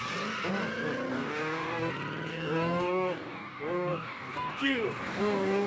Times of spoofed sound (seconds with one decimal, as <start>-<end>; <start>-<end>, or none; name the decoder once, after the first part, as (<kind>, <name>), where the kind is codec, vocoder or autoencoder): 1.1-1.9 (codec, DAC); 2.3-5.7